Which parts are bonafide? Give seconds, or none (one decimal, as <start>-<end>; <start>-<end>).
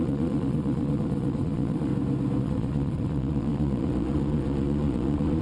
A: 1.9-2.4